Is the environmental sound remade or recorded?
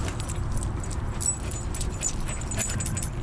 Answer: recorded